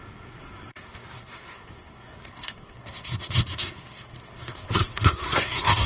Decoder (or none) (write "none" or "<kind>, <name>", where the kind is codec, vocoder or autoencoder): codec, SNAC